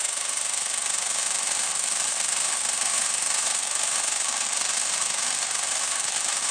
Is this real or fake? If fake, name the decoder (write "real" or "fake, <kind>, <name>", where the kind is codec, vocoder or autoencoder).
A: fake, autoencoder, DAC-VAE